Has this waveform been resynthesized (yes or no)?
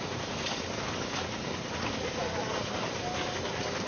no